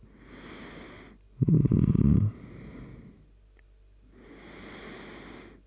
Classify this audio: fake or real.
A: real